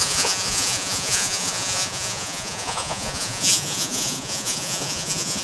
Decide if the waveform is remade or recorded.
remade